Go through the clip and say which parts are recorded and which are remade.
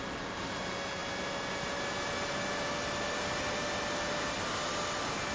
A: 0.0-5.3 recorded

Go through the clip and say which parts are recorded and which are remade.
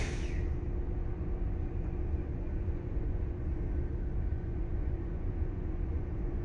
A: 0.0-0.9 recorded; 0.9-3.5 remade; 3.5-4.3 recorded; 4.3-6.4 remade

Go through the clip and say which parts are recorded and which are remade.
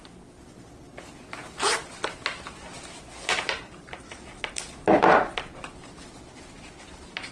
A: 0.0-7.3 recorded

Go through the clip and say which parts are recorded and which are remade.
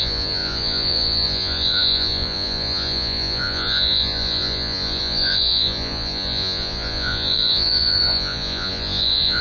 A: 0.0-9.4 remade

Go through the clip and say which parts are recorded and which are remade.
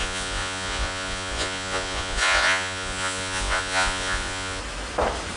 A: 0.0-4.6 remade; 4.6-5.4 recorded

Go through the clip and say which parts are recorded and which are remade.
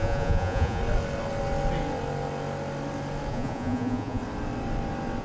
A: 0.0-0.8 remade; 0.8-3.3 recorded; 3.3-4.2 remade; 4.2-5.2 recorded